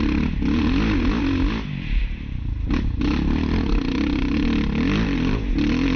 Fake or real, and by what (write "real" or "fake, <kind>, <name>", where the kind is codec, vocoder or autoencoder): real